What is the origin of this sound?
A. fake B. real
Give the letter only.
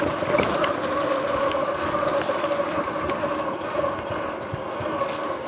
B